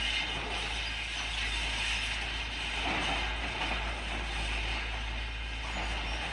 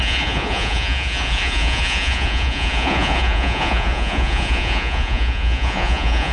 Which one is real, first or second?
first